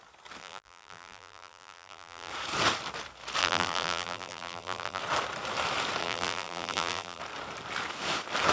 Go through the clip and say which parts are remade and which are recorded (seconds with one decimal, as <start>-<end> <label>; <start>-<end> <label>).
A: 0.0-0.4 recorded; 0.4-2.3 remade; 2.3-3.4 recorded; 3.4-5.0 remade; 5.0-6.0 recorded; 6.0-7.2 remade; 7.2-8.5 recorded